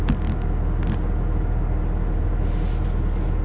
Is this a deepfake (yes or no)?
no